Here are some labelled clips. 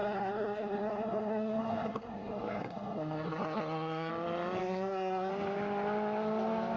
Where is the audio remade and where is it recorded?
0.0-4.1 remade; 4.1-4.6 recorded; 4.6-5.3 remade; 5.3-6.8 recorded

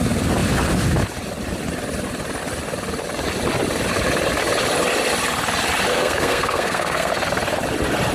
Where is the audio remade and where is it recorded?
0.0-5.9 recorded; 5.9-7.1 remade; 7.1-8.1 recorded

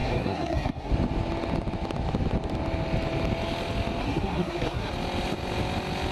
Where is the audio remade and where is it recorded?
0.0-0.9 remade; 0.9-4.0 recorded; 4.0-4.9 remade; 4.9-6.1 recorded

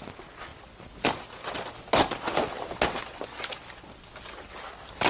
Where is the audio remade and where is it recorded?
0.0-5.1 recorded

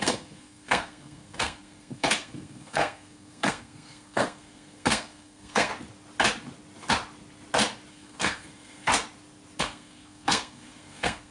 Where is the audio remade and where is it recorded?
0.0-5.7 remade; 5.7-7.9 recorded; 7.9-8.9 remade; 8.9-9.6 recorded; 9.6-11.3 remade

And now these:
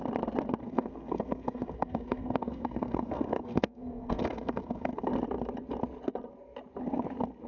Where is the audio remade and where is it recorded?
0.0-0.6 recorded; 0.6-5.1 remade; 5.1-7.5 recorded

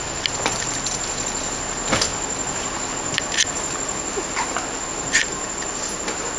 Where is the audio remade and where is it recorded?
0.0-6.4 recorded